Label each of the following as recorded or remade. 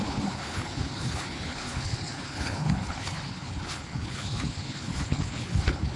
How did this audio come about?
remade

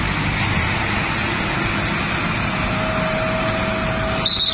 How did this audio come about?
recorded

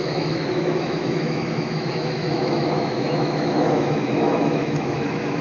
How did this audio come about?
remade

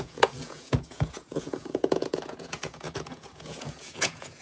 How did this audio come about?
remade